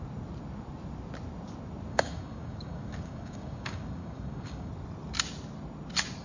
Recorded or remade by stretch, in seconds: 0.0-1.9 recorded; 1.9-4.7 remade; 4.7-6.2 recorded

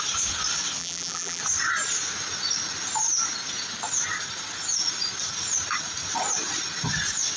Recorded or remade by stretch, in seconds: 0.0-0.8 recorded; 0.8-1.4 remade; 1.4-7.4 recorded